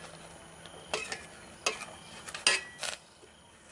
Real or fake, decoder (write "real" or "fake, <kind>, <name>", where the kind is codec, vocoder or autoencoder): real